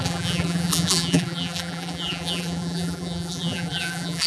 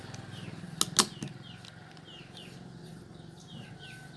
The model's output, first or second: first